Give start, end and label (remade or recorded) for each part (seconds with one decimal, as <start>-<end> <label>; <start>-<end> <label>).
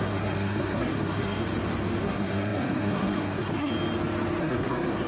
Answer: 0.0-1.4 remade; 1.4-2.0 recorded; 2.0-3.7 remade; 3.7-4.4 recorded; 4.4-5.1 remade